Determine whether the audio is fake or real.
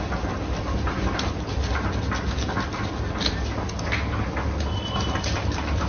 real